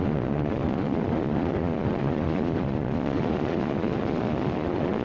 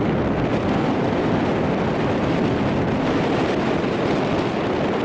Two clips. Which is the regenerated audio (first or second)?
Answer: first